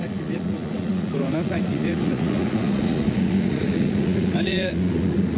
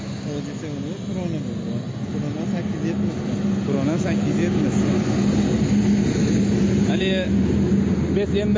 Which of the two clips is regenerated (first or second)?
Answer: first